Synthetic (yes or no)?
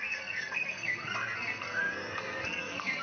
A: yes